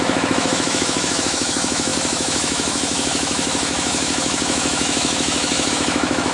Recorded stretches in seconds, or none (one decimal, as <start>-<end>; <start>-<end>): none